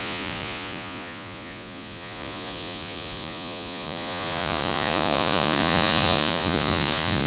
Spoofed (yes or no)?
yes